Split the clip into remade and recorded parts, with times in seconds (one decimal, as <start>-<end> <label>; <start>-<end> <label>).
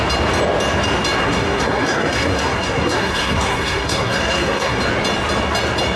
0.0-1.2 recorded; 1.2-4.8 remade; 4.8-6.0 recorded